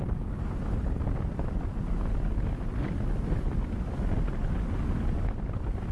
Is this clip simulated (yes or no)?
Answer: no